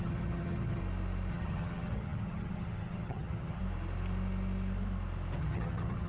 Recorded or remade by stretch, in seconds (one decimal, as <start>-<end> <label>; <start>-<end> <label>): 0.0-0.8 remade; 0.8-1.3 recorded; 1.3-3.6 remade; 3.6-5.4 recorded; 5.4-6.1 remade

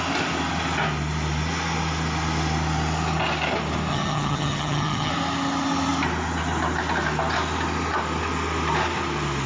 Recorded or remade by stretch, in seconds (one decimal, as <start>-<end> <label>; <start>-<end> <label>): 0.0-3.9 recorded; 3.9-5.1 remade; 5.1-9.5 recorded

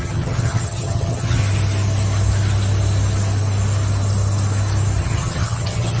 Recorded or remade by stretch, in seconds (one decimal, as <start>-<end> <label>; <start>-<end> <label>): 0.0-1.4 remade; 1.4-5.0 recorded; 5.0-6.0 remade

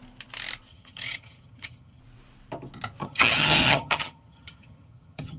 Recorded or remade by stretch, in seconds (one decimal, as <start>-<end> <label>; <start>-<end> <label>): 0.0-0.7 recorded; 0.7-2.0 remade; 2.0-3.0 recorded; 3.0-5.4 remade

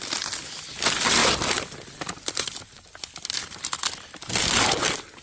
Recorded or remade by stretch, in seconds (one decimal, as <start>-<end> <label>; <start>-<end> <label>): 0.0-5.2 recorded

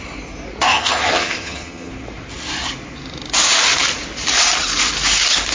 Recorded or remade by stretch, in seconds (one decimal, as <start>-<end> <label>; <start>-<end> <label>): 0.0-0.7 recorded; 0.7-1.9 remade; 1.9-5.5 recorded

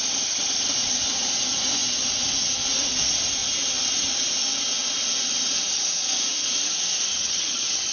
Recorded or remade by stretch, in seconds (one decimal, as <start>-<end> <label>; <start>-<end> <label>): 0.0-7.1 recorded; 7.1-7.9 remade

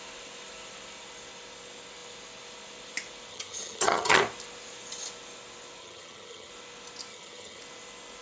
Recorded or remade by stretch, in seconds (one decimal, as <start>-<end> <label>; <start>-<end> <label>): 0.0-3.3 recorded; 3.3-4.2 remade; 4.2-5.8 recorded; 5.8-6.5 remade; 6.5-7.1 recorded; 7.1-7.6 remade; 7.6-8.2 recorded